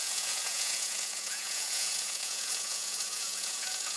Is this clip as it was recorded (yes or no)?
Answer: no